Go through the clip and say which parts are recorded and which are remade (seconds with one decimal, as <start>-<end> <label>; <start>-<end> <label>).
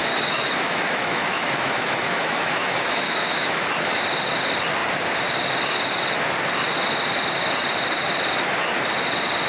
0.0-4.0 remade; 4.0-9.5 recorded